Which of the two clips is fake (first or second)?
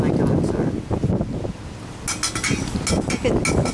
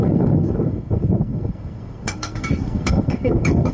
second